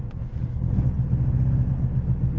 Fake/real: real